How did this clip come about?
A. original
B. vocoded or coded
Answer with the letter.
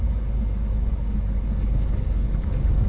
B